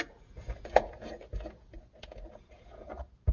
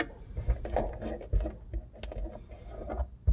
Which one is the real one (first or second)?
second